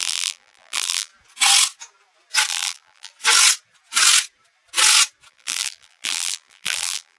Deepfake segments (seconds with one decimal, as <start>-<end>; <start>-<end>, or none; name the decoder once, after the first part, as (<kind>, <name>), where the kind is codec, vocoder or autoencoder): 0.0-1.1 (vocoder, BigVGAN v2); 2.5-3.1; 5.3-7.2